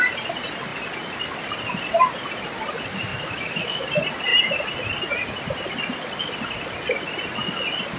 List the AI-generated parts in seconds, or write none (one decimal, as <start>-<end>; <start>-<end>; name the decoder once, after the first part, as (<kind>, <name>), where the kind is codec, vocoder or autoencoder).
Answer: 3.1-3.9 (autoencoder, DAC-VAE)